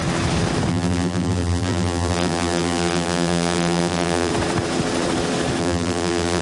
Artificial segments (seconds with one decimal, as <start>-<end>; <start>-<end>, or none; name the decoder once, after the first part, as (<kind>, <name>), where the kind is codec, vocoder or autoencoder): 0.7-4.3 (vocoder, BigVGAN v2); 5.6-6.4